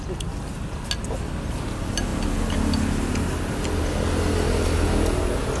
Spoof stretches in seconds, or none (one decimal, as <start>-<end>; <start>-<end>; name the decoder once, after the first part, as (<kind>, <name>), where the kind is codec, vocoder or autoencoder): none